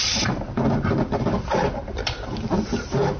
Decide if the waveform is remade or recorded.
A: recorded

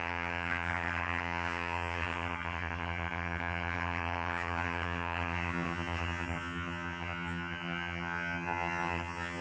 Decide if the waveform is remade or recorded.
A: remade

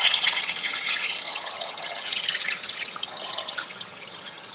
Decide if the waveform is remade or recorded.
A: remade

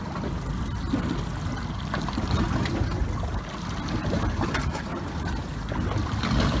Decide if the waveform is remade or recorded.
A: recorded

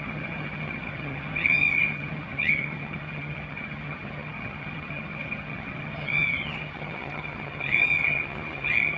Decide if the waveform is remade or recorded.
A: remade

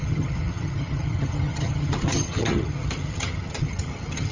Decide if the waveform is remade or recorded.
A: remade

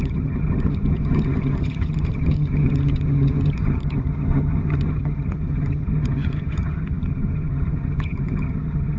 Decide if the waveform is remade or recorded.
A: remade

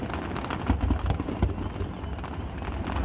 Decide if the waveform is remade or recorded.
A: recorded